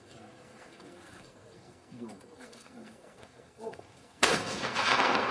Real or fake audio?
fake